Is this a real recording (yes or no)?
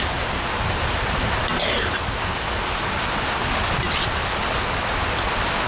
yes